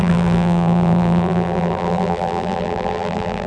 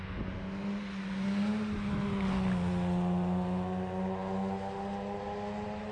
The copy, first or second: first